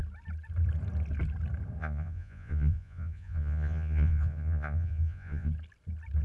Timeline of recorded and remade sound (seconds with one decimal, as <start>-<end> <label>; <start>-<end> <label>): 0.0-1.8 recorded; 1.8-5.5 remade; 5.5-6.2 recorded